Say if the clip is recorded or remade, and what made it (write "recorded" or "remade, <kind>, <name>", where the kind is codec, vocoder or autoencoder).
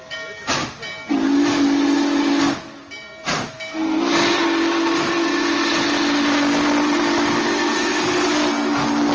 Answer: recorded